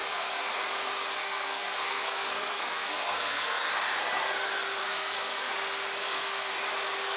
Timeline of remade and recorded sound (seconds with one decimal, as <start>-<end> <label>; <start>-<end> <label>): 0.0-0.5 remade; 0.5-1.2 recorded; 1.2-3.7 remade; 3.7-4.8 recorded; 4.8-5.5 remade; 5.5-6.0 recorded; 6.0-6.5 remade; 6.5-7.2 recorded